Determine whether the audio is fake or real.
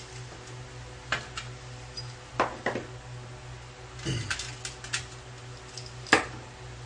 real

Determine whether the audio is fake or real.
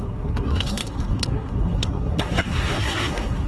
fake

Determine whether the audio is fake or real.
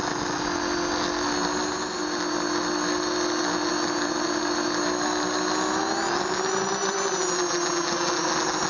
real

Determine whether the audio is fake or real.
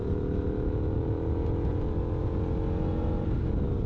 real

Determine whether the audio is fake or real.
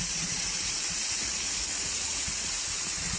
fake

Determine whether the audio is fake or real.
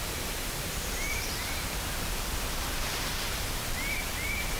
fake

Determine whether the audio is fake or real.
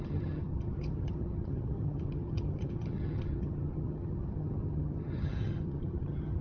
fake